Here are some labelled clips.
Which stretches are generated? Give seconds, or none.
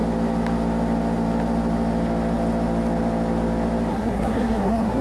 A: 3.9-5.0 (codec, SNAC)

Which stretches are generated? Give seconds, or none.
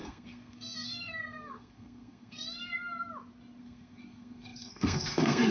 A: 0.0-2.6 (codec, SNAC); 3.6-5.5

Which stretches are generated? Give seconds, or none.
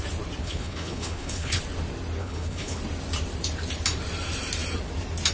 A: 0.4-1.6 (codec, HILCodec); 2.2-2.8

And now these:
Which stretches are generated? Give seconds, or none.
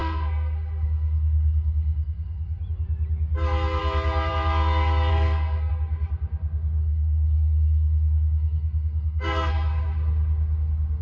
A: 0.0-2.6 (codec, SNAC); 5.1-5.7; 6.8-9.5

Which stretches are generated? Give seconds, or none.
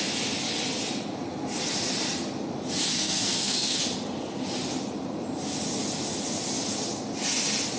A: 2.9-3.8 (codec, SNAC)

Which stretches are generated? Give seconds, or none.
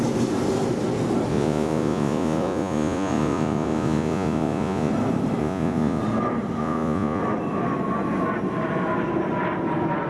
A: 1.3-4.9 (vocoder, Vocos); 5.4-6.0; 6.6-7.2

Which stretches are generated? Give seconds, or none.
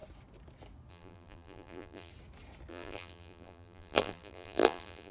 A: 0.9-2.1 (vocoder, BigVGAN v2); 2.7-5.1